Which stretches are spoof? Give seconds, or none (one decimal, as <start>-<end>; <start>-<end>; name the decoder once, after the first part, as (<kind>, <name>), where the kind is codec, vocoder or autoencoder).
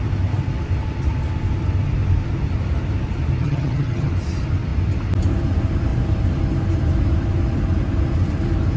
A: 3.4-4.1 (vocoder, HiFi-GAN)